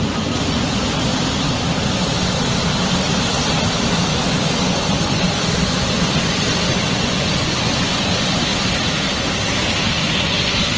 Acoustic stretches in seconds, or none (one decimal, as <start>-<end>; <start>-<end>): 1.1-4.1; 8.5-10.0